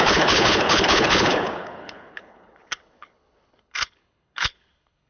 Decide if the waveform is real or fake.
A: fake